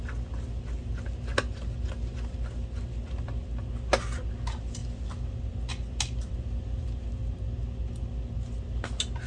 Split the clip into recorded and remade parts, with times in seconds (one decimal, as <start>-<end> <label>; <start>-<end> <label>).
0.0-9.3 recorded